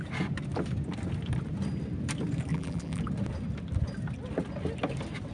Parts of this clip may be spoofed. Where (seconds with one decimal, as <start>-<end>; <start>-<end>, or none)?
2.5-3.0